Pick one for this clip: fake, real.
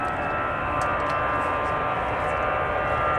real